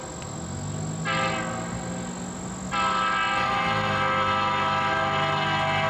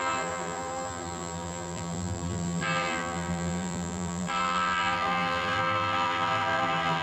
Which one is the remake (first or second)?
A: second